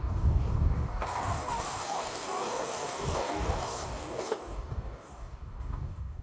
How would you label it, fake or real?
fake